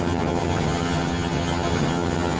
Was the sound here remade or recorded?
remade